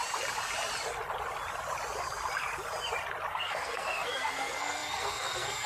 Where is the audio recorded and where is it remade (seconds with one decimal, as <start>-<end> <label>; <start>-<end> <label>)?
0.0-3.3 recorded; 3.3-5.7 remade